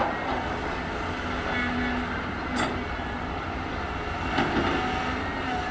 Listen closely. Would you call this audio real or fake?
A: real